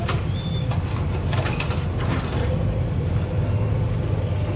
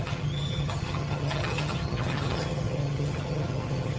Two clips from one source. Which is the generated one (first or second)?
second